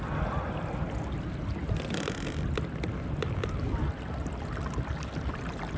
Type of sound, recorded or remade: recorded